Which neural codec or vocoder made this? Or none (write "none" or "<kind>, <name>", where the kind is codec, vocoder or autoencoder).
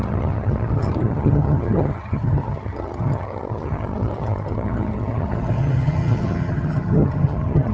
vocoder, HiFi-GAN